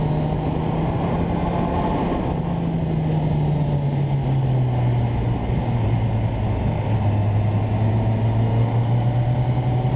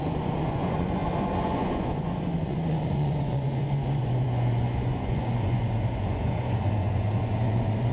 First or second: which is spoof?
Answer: second